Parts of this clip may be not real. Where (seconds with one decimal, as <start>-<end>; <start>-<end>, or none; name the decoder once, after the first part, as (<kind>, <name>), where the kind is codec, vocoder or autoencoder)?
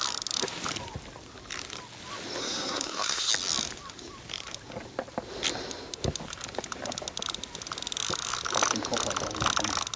2.4-3.3 (codec, SNAC)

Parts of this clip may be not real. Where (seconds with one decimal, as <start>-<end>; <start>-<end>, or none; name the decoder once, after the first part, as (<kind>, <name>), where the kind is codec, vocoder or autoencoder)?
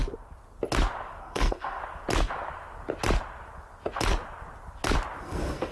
1.2-1.8 (codec, SNAC); 5.2-5.7